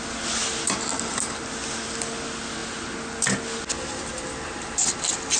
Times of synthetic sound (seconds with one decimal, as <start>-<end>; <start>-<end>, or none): none

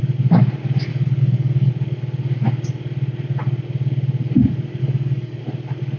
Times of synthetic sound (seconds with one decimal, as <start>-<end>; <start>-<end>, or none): 0.9-1.7; 4.8-5.4

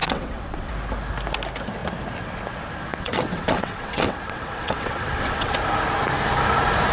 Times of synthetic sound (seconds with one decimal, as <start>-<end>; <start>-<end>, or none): 0.0-0.7; 2.9-5.5

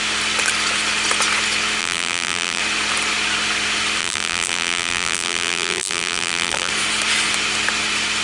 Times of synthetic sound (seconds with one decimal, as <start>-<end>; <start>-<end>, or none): 1.8-2.6; 4.0-6.7

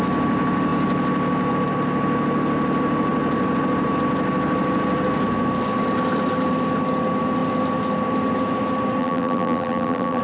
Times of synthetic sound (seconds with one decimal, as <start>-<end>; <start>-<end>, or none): 9.0-10.2